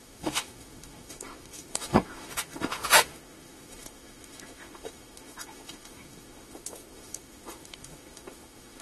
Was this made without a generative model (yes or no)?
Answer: no